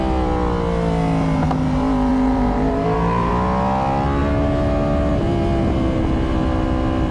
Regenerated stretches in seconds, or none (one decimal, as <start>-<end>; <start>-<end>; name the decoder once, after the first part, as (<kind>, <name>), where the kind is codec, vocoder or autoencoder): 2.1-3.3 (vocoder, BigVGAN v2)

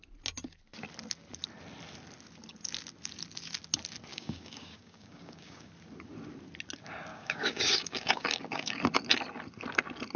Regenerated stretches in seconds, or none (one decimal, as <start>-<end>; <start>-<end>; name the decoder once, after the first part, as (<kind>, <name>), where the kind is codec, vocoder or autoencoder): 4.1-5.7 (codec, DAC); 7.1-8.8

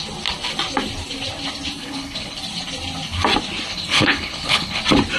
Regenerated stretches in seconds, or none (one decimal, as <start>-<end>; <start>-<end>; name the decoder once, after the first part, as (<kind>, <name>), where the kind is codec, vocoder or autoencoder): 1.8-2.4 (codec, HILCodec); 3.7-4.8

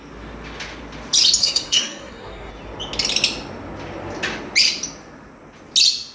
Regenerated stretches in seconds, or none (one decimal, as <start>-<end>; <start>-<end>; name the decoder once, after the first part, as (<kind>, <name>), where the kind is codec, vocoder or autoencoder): 1.4-2.5 (codec, SNAC)

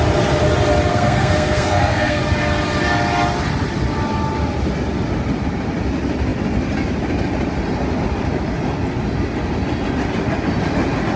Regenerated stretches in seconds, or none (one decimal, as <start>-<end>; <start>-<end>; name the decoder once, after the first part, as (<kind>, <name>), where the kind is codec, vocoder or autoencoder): 0.9-2.2 (codec, SNAC)